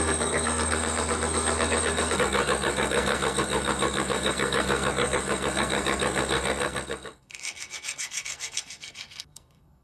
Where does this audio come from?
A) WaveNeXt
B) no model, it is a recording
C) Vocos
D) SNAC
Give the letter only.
D